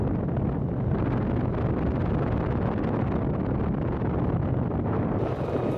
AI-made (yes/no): no